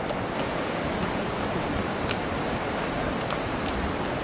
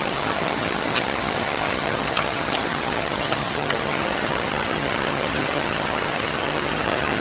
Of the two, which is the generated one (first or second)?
second